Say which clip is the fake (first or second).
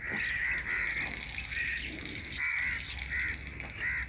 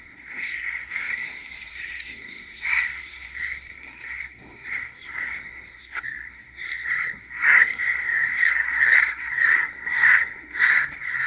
second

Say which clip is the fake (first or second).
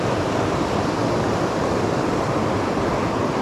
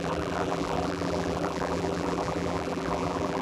second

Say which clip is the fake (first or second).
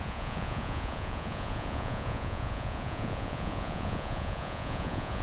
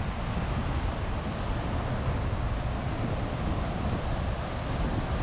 first